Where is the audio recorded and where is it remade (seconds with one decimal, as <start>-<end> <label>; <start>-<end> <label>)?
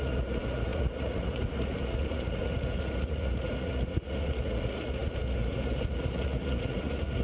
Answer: 0.0-7.2 remade